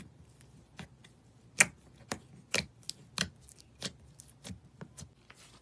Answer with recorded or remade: recorded